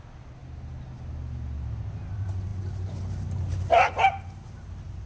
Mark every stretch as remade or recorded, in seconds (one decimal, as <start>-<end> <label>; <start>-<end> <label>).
0.0-5.1 recorded